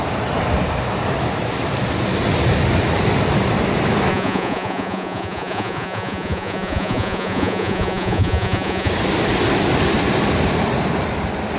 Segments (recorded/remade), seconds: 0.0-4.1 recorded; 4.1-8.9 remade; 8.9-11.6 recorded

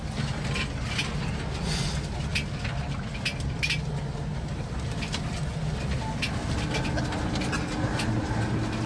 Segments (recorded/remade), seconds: 0.0-8.9 recorded

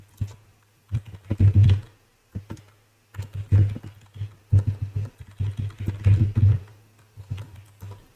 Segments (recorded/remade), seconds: 0.0-8.2 recorded

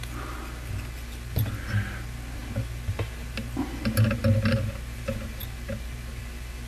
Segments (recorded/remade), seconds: 0.0-6.7 recorded

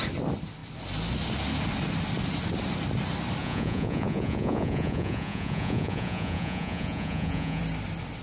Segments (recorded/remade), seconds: 0.0-3.4 recorded; 3.4-7.6 remade; 7.6-8.2 recorded

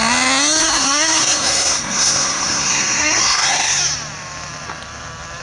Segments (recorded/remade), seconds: 0.0-0.6 recorded; 0.6-3.8 remade; 3.8-5.4 recorded

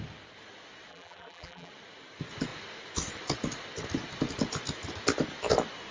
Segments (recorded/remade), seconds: 0.0-0.9 recorded; 0.9-1.7 remade; 1.7-5.9 recorded